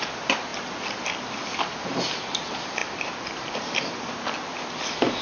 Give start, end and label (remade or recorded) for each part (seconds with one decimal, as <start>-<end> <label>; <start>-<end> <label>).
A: 0.0-5.2 recorded